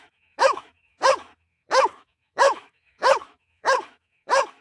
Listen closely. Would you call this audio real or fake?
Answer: fake